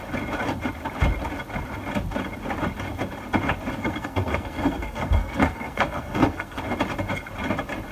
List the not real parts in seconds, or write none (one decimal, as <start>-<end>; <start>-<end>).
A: 3.8-6.6